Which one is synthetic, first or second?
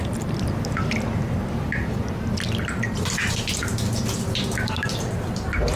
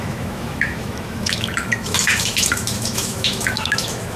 second